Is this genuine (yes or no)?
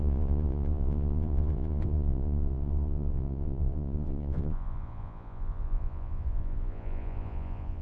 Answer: no